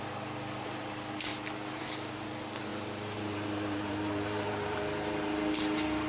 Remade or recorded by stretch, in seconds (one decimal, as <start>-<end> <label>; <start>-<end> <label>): 0.0-2.7 recorded; 2.7-4.8 remade; 4.8-6.1 recorded